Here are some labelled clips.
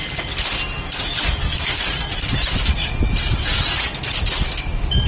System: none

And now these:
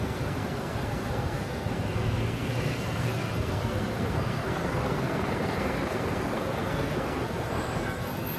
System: codec, SNAC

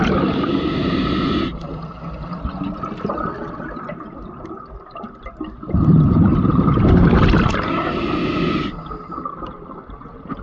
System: none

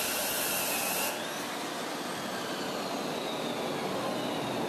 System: none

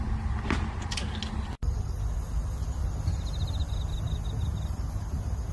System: none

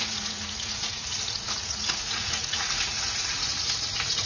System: vocoder, Vocos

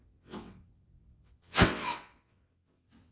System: vocoder, WaveNeXt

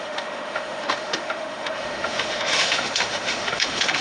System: autoencoder, DAC-VAE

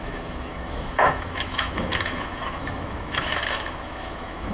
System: autoencoder, DAC-VAE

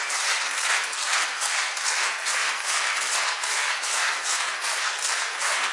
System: codec, SNAC